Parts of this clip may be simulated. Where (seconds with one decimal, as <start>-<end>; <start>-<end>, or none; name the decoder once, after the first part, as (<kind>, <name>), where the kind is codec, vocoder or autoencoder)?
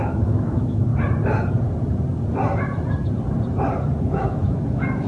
0.0-0.9 (autoencoder, DAC-VAE); 4.0-5.1